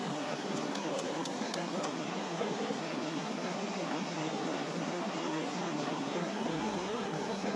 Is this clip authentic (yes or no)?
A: no